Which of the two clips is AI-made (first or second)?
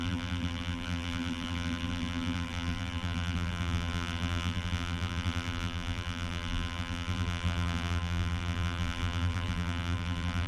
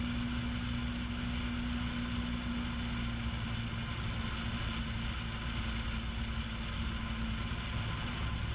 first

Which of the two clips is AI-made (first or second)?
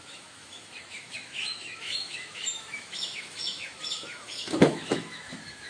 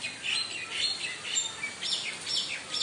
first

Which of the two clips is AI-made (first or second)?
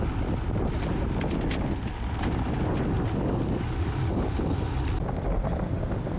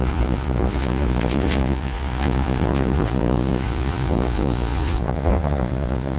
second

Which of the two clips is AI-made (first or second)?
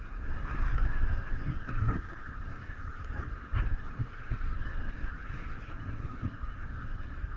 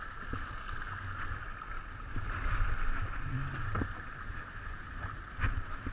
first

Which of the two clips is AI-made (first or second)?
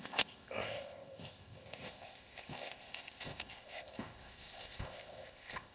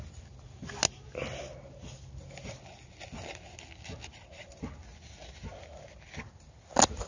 first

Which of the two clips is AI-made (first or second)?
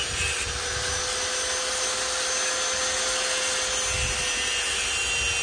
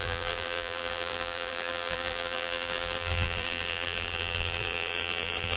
second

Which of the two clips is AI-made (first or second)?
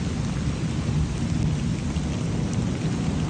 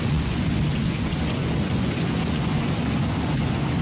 second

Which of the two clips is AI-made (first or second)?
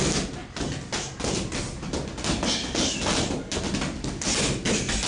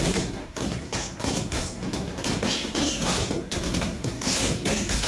second